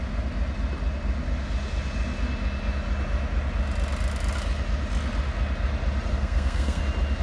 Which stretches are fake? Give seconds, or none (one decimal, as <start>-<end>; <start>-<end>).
6.1-6.8